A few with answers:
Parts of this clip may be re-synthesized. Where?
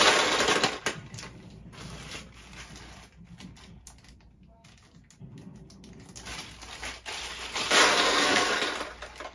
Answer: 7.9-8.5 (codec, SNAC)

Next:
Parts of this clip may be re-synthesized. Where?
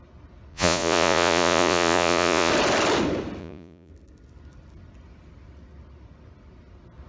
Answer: 0.5-2.5 (vocoder, Vocos); 3.4-3.9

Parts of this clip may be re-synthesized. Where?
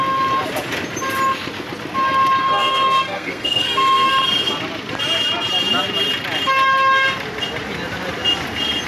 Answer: 2.4-4.1 (codec, SNAC)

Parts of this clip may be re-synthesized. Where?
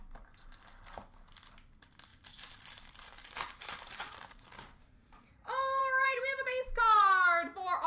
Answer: 2.1-6.8 (vocoder, BigVGAN v2)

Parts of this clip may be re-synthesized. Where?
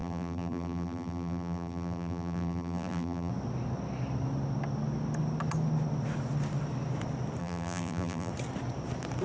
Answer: 0.0-3.3 (vocoder, BigVGAN v2); 7.4-8.3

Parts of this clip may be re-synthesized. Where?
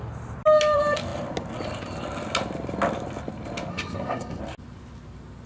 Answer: 3.7-4.4 (codec, SNAC)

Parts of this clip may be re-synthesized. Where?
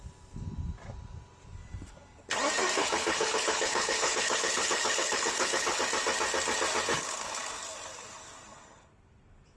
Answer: 2.8-5.8 (codec, HILCodec); 6.9-7.4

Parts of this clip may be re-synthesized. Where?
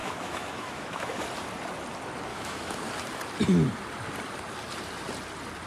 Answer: 0.0-1.2 (autoencoder, DAC-VAE); 2.3-2.8